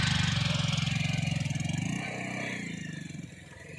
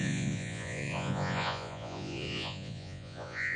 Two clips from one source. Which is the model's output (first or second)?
second